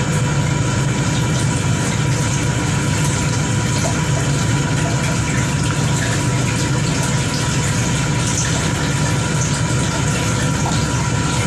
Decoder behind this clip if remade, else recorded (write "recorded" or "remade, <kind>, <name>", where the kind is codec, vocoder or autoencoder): recorded